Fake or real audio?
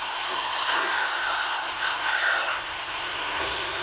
fake